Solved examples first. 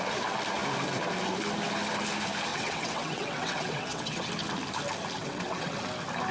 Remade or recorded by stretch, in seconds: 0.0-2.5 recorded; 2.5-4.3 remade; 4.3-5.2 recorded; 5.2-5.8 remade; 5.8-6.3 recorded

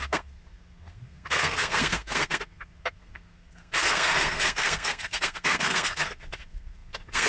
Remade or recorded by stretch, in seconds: 0.0-7.3 remade

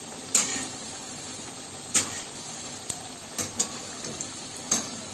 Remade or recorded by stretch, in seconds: 0.0-0.5 recorded; 0.5-3.1 remade; 3.1-5.1 recorded

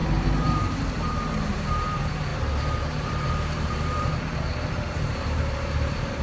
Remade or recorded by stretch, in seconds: 0.0-2.3 remade; 2.3-3.1 recorded; 3.1-4.1 remade; 4.1-4.7 recorded; 4.7-6.2 remade

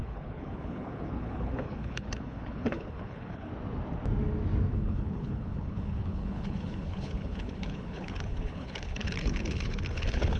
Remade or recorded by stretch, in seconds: 0.0-3.5 remade; 3.5-4.7 recorded; 4.7-10.4 remade

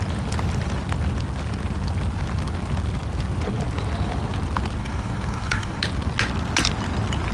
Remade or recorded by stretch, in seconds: 0.0-4.8 recorded; 4.8-5.8 remade; 5.8-7.3 recorded

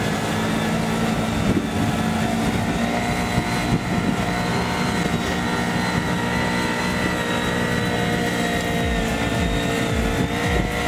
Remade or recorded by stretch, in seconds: 0.0-10.9 recorded

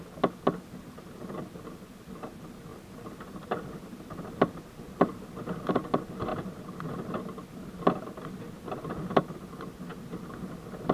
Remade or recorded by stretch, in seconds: 0.0-2.7 recorded; 2.7-5.7 remade; 5.7-9.9 recorded; 9.9-10.5 remade; 10.5-10.9 recorded